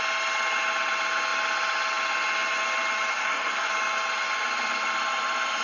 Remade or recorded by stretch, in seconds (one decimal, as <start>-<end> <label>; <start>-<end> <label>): 0.0-3.1 recorded; 3.1-3.7 remade; 3.7-5.6 recorded